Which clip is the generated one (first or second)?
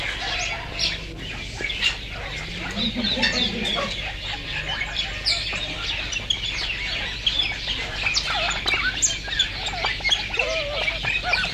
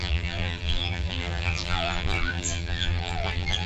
second